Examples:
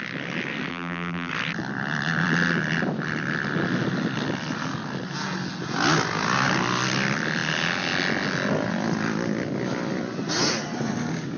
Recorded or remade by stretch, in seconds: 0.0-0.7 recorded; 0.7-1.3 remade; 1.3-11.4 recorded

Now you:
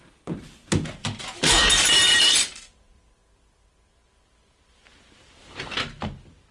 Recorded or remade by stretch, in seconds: 0.0-1.0 recorded; 1.0-4.8 remade; 4.8-5.2 recorded; 5.2-6.0 remade; 6.0-6.5 recorded

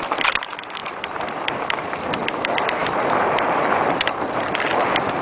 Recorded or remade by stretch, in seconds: 0.0-5.2 remade